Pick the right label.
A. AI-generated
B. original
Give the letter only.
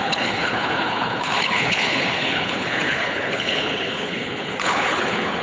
A